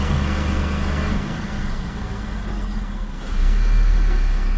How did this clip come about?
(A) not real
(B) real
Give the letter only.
A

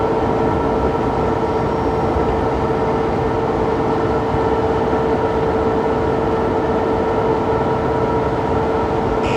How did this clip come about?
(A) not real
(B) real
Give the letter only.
B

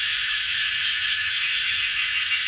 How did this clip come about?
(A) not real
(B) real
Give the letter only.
A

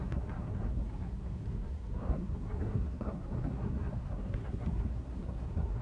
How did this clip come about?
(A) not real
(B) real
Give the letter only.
A